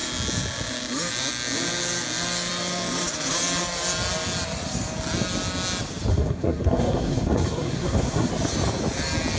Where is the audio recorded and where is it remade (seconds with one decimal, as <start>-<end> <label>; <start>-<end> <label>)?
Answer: 0.0-6.1 recorded; 6.1-8.3 remade; 8.3-9.4 recorded

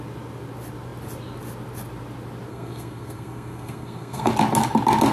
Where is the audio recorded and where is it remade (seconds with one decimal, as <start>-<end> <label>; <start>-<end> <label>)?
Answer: 0.0-2.5 recorded; 2.5-4.3 remade; 4.3-5.1 recorded

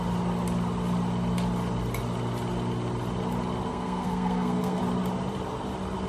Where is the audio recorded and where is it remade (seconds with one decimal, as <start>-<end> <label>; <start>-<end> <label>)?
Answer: 0.0-3.7 recorded; 3.7-4.8 remade; 4.8-6.1 recorded

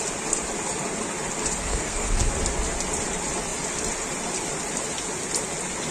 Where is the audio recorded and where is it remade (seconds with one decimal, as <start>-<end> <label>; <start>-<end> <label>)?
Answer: 0.0-1.6 recorded; 1.6-2.3 remade; 2.3-5.9 recorded

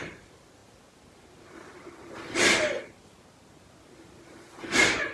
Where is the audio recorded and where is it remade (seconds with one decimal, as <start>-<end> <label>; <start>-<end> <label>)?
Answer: 0.0-5.1 recorded

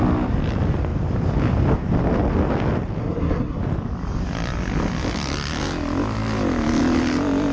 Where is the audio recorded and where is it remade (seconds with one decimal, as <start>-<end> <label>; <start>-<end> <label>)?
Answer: 0.0-3.0 recorded; 3.0-3.6 remade; 3.6-7.5 recorded